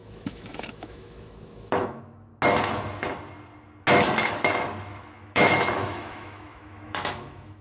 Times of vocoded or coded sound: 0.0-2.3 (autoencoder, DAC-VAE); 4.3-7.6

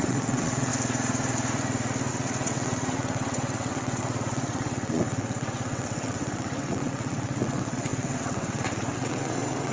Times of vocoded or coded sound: 0.0-0.7 (vocoder, WaveNeXt); 2.1-9.7

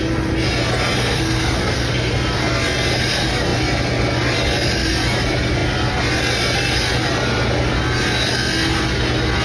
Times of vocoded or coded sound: 1.0-2.1 (codec, SNAC)

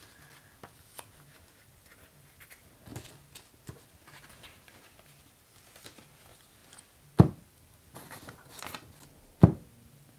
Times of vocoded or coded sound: none

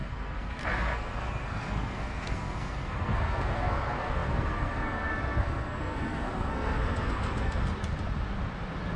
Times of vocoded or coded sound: 0.0-7.7 (codec, SNAC)

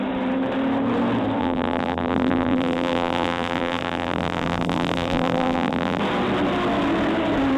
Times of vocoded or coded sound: 1.4-6.0 (vocoder, BigVGAN v2)

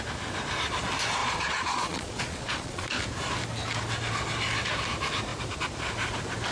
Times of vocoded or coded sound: 1.2-2.9 (vocoder, Vocos)

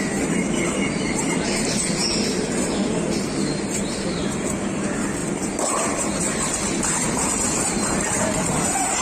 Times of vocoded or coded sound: none